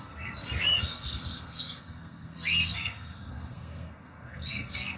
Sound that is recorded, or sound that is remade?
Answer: remade